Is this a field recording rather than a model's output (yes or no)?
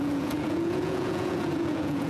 no